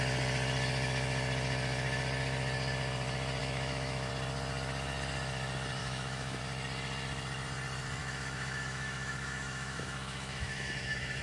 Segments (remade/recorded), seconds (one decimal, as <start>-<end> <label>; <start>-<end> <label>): 0.0-3.4 recorded; 3.4-4.1 remade; 4.1-5.8 recorded; 5.8-6.4 remade; 6.4-8.0 recorded; 8.0-11.2 remade